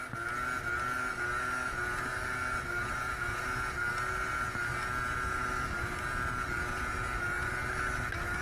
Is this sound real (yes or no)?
yes